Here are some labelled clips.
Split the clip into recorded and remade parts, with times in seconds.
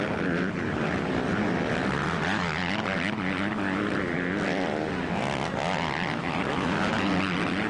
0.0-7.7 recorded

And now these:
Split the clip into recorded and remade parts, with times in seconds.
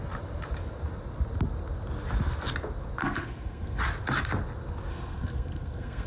0.0-3.0 recorded; 3.0-3.8 remade; 3.8-4.9 recorded; 4.9-6.1 remade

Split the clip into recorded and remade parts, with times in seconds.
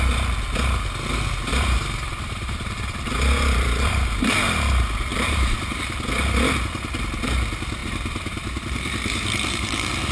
0.0-1.5 recorded; 1.5-4.3 remade; 4.3-5.1 recorded; 5.1-5.8 remade; 5.8-7.8 recorded; 7.8-10.1 remade